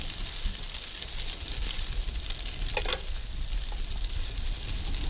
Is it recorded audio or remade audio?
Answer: recorded